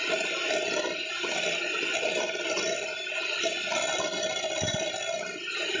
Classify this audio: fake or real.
real